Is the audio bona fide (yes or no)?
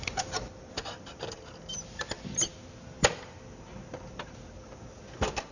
yes